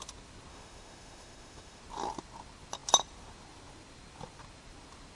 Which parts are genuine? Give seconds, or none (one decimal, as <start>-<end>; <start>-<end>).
0.0-0.5; 1.8-5.2